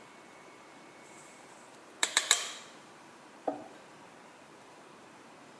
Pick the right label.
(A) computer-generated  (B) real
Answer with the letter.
A